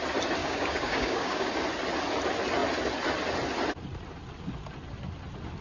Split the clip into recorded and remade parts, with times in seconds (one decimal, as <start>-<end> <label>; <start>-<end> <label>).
0.0-0.4 recorded; 0.4-1.5 remade; 1.5-5.6 recorded